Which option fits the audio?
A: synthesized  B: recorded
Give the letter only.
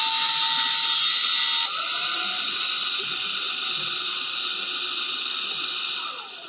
B